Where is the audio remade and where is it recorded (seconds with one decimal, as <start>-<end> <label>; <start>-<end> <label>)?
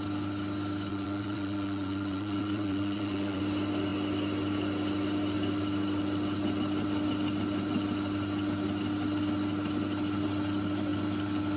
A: 0.0-0.9 recorded; 0.9-3.4 remade; 3.4-11.6 recorded